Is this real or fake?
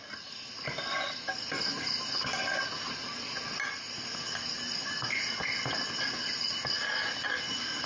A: real